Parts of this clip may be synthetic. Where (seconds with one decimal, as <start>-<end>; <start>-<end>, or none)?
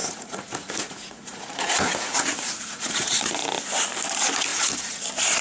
0.0-3.2; 4.5-5.0